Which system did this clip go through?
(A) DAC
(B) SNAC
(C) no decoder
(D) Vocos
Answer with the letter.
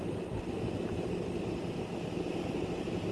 C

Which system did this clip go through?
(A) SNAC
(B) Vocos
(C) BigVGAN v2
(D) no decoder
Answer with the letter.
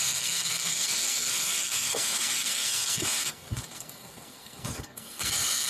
A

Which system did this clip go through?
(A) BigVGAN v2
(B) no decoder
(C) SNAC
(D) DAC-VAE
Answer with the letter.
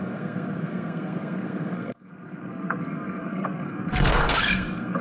C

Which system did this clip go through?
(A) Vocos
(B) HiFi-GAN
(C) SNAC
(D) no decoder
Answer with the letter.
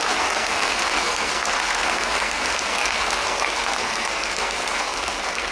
C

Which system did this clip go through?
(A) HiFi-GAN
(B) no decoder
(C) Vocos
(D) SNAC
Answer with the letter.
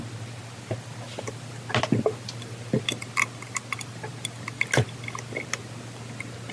B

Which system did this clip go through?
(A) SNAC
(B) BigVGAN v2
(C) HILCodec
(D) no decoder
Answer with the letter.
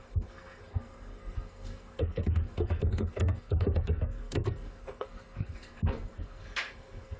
A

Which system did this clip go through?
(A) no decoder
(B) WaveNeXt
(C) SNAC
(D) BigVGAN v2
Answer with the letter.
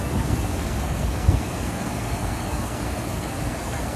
C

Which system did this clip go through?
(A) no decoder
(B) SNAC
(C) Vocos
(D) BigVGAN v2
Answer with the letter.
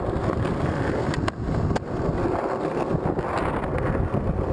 A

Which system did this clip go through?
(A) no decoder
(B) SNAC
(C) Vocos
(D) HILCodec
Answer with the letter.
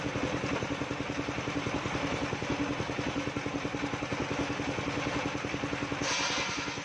A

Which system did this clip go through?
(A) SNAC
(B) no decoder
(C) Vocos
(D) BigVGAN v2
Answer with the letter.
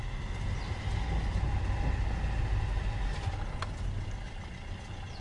B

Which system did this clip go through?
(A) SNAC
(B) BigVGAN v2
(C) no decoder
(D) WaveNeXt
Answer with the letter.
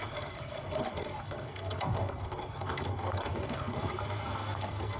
A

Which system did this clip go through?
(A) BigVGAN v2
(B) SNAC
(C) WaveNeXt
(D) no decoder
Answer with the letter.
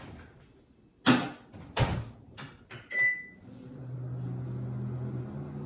D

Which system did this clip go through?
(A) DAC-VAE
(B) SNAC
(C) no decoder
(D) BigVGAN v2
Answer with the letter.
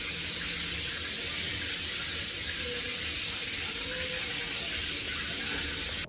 C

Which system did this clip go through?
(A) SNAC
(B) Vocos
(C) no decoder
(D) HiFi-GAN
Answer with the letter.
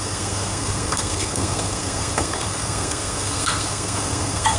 A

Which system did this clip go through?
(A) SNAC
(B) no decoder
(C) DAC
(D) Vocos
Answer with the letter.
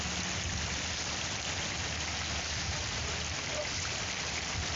B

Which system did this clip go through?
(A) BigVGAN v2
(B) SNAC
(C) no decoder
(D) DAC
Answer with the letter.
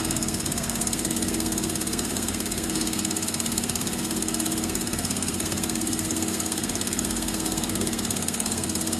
B